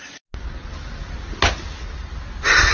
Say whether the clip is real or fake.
real